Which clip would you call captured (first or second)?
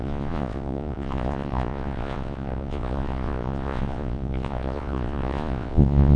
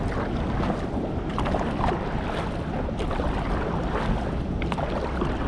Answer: second